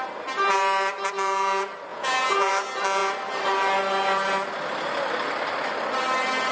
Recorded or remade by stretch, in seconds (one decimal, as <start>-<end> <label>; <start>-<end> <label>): 0.0-1.9 recorded; 1.9-2.5 remade; 2.5-6.5 recorded

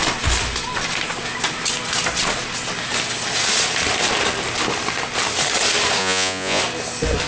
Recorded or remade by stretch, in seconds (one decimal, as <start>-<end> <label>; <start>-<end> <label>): 0.0-6.0 recorded; 6.0-6.6 remade; 6.6-7.3 recorded

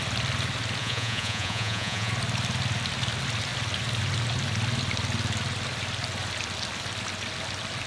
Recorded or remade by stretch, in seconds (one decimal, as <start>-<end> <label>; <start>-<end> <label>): 0.0-0.8 recorded; 0.8-2.1 remade; 2.1-7.9 recorded

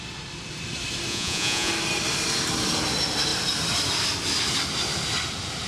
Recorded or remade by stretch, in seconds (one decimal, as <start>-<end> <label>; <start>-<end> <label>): 0.0-1.1 recorded; 1.1-1.7 remade; 1.7-5.7 recorded

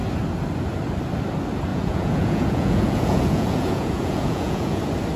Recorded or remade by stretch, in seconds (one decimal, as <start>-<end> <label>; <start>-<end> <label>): 0.0-1.7 recorded; 1.7-4.8 remade; 4.8-5.2 recorded

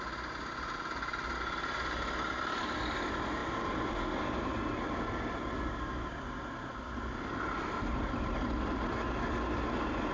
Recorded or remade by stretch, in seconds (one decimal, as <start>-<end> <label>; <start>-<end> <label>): 0.0-10.1 recorded

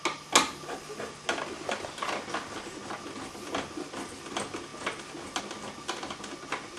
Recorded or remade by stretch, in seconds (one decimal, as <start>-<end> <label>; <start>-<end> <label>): 0.0-6.8 recorded